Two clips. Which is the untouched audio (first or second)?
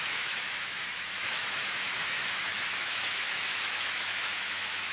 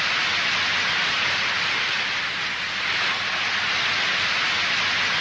second